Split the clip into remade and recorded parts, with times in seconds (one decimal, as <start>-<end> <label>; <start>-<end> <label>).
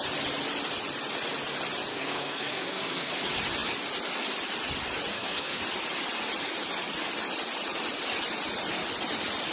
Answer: 0.0-1.9 recorded; 1.9-3.1 remade; 3.1-5.1 recorded; 5.1-5.6 remade; 5.6-9.5 recorded